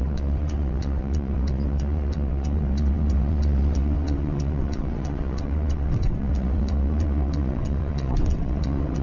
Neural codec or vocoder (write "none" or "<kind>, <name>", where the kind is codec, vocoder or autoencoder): vocoder, WaveNeXt